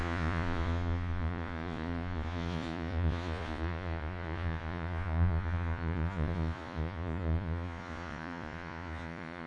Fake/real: fake